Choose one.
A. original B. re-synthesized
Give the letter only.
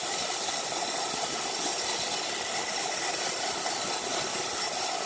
A